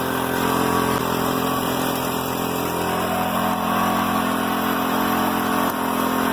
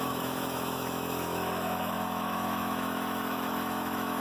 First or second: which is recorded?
first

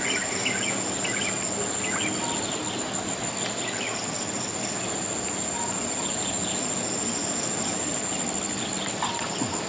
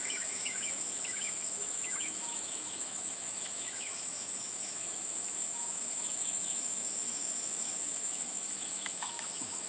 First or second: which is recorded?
first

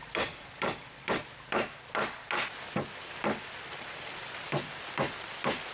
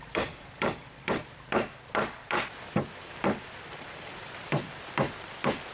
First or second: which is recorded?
first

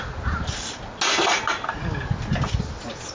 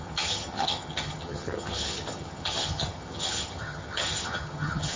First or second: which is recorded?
first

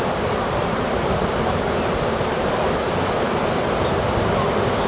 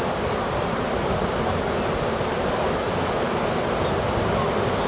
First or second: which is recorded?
second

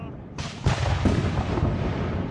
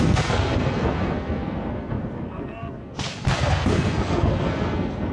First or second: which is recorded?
first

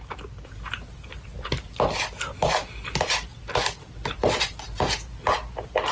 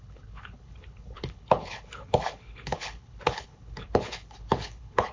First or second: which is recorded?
first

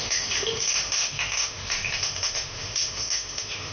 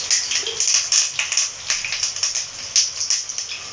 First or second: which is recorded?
second